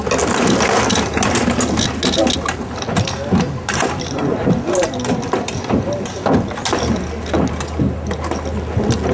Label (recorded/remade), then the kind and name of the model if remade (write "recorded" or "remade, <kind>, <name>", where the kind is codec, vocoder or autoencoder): recorded